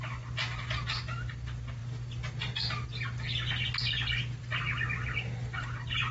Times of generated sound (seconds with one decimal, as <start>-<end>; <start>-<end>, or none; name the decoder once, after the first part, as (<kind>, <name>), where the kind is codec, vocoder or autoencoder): none